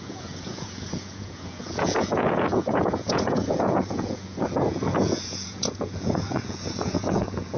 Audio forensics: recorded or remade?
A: remade